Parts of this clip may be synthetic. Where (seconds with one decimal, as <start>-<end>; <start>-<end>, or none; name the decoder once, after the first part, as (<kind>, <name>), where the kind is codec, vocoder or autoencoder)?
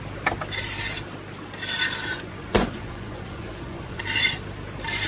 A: 2.1-4.0 (vocoder, Vocos)